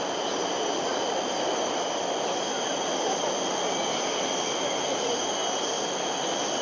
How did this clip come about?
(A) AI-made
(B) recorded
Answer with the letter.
B